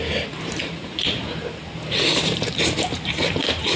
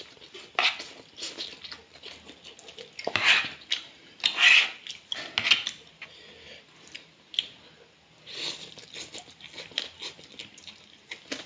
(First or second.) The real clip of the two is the second